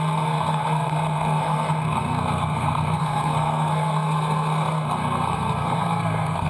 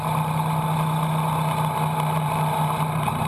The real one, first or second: second